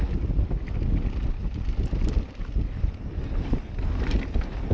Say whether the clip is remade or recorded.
recorded